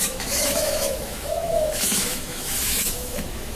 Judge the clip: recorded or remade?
remade